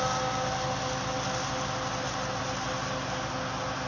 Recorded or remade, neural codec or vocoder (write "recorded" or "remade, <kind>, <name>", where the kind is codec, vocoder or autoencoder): recorded